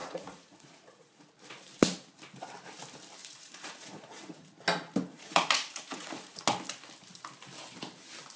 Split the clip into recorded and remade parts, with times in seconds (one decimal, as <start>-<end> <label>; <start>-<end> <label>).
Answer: 0.0-1.3 remade; 1.3-3.2 recorded; 3.2-4.4 remade; 4.4-5.1 recorded; 5.1-6.4 remade; 6.4-8.4 recorded